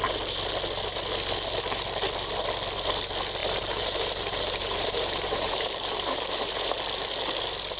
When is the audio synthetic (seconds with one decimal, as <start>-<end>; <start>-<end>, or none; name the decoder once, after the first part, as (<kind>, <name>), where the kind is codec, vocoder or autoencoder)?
3.4-6.7 (vocoder, BigVGAN v2)

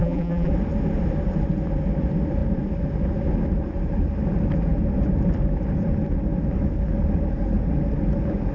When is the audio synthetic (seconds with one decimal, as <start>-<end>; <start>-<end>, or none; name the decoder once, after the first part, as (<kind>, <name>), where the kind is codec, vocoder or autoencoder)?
0.0-0.5 (vocoder, BigVGAN v2)

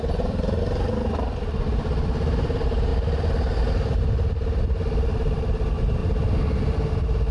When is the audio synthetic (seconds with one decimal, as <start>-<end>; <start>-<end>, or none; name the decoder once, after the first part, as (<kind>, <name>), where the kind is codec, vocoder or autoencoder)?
0.0-2.9 (vocoder, BigVGAN v2); 3.7-6.0

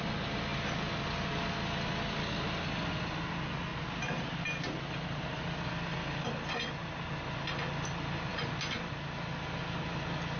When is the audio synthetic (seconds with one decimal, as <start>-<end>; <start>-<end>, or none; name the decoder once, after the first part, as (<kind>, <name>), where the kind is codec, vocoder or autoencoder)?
3.7-5.7 (vocoder, BigVGAN v2)

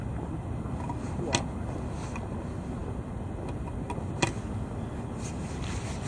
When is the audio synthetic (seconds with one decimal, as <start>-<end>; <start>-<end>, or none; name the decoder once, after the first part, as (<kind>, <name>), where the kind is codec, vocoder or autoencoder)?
none

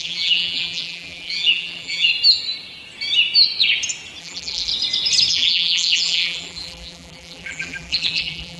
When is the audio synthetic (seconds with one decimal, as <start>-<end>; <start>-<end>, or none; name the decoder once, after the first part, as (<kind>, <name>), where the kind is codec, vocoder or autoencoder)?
0.0-2.1 (vocoder, BigVGAN v2); 4.2-4.7; 5.3-8.6